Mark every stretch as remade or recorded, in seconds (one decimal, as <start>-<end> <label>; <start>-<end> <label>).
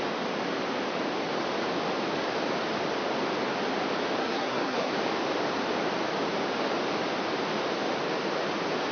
0.0-4.2 recorded; 4.2-4.9 remade; 4.9-8.9 recorded